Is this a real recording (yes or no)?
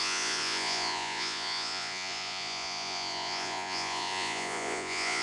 no